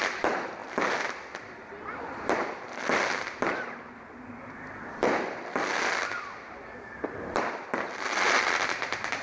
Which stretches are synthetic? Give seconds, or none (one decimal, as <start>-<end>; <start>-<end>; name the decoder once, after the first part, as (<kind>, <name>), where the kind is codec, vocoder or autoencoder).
none